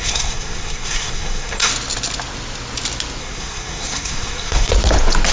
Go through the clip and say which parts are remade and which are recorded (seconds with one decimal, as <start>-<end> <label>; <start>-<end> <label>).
0.0-1.7 remade; 1.7-3.2 recorded; 3.2-4.7 remade; 4.7-5.3 recorded